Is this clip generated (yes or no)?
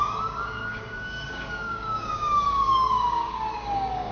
yes